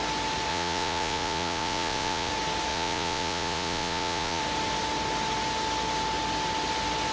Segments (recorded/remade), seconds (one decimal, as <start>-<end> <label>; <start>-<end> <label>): 0.0-0.5 recorded; 0.5-2.3 remade; 2.3-2.7 recorded; 2.7-4.4 remade; 4.4-7.1 recorded